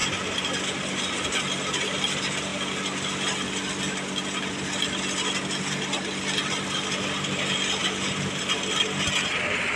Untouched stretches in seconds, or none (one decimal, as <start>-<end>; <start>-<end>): 0.0-9.8